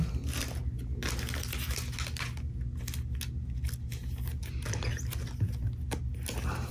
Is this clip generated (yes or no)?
no